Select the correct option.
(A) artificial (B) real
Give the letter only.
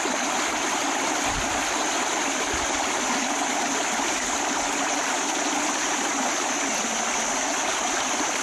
B